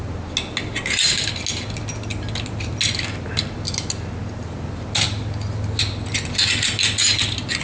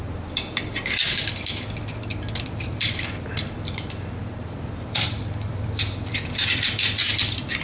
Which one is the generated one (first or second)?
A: second